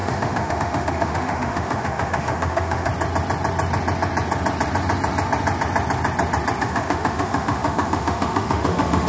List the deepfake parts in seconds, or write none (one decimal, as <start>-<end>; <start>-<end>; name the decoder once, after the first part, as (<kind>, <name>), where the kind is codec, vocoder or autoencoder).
0.0-2.9 (autoencoder, DAC-VAE); 6.6-9.1